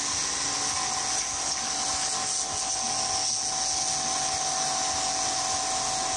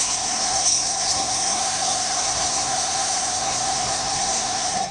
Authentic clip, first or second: first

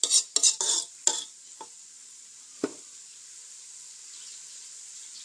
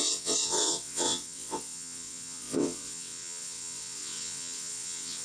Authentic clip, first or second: first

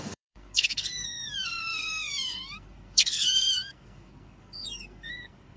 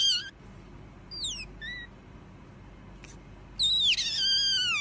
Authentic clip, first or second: second